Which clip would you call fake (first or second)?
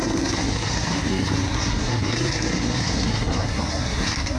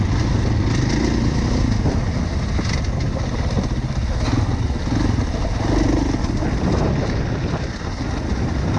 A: first